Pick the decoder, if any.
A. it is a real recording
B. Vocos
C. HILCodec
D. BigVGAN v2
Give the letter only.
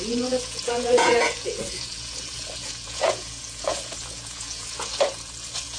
B